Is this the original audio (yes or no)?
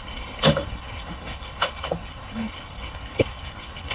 no